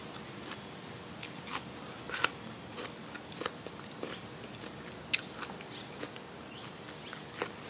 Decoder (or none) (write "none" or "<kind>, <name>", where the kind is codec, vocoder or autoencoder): none